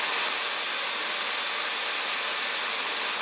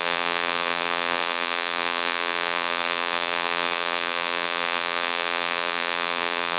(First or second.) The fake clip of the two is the second